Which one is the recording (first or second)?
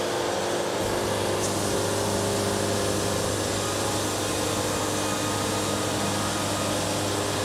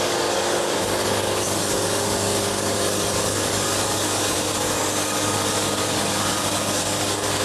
first